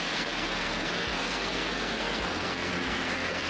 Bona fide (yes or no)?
no